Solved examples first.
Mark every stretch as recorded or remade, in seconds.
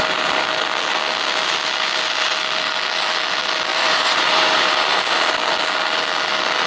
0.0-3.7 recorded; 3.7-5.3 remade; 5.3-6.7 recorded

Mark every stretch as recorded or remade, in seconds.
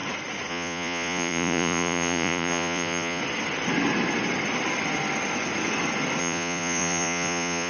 0.0-0.5 recorded; 0.5-3.2 remade; 3.2-6.2 recorded; 6.2-7.7 remade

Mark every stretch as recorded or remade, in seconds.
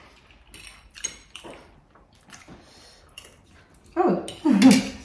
0.0-0.7 recorded; 0.7-3.6 remade; 3.6-5.0 recorded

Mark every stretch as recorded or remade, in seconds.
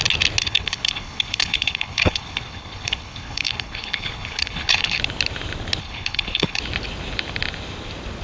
0.0-0.4 recorded; 0.4-5.0 remade; 5.0-5.8 recorded; 5.8-6.6 remade; 6.6-8.2 recorded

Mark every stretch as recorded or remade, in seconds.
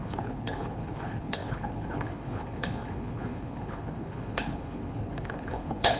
0.0-6.0 remade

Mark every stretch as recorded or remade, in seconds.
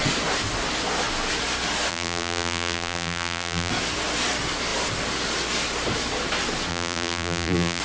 0.0-1.9 recorded; 1.9-3.7 remade; 3.7-6.7 recorded; 6.7-7.8 remade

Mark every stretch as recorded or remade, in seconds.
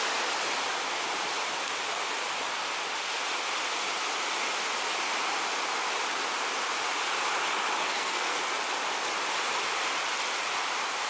0.0-7.8 recorded; 7.8-8.4 remade; 8.4-11.1 recorded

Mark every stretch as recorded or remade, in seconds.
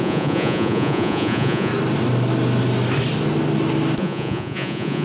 0.0-1.7 remade; 1.7-4.0 recorded; 4.0-5.0 remade